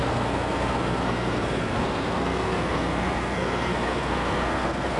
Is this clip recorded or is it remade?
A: remade